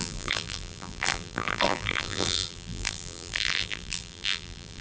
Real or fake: fake